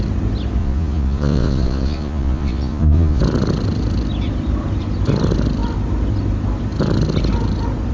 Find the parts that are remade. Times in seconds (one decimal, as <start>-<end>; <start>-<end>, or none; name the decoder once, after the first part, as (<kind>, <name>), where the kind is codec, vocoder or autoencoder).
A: 0.6-3.2 (vocoder, Vocos)